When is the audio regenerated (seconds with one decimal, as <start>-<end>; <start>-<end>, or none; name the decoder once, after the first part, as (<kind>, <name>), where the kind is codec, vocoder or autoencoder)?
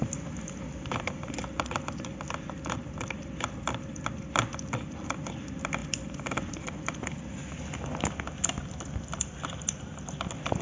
none